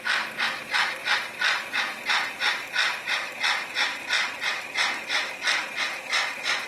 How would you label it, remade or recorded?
recorded